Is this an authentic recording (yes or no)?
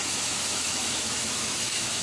no